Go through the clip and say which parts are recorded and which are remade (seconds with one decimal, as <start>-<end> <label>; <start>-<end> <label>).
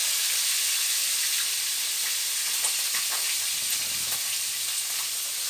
0.0-5.5 recorded